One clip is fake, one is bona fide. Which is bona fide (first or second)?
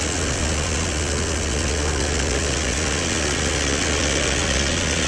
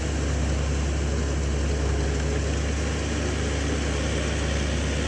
second